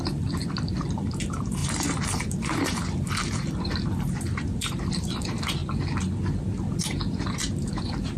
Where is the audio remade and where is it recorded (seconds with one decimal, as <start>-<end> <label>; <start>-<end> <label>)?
0.0-5.6 remade; 5.6-6.8 recorded; 6.8-8.2 remade